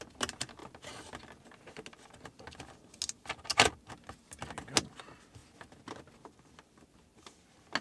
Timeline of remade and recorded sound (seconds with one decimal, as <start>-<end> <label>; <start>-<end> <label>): 0.0-7.8 recorded